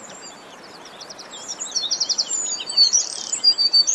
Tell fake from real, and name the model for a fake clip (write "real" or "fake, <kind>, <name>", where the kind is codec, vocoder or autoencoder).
fake, vocoder, BigVGAN v2